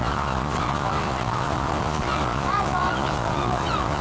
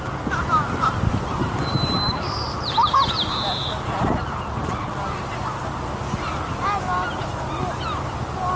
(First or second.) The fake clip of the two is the first